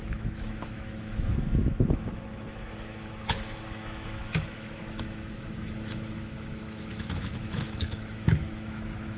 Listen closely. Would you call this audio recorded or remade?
remade